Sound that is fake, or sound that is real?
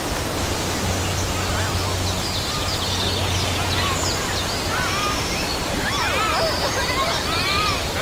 fake